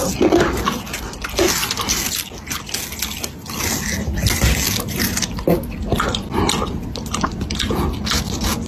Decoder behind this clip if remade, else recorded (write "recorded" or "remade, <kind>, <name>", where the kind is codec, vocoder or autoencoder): recorded